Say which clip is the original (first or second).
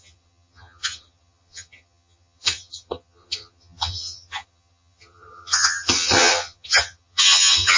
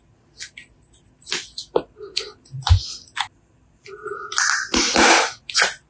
second